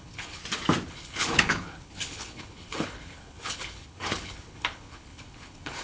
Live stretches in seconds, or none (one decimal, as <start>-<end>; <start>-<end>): 0.4-0.9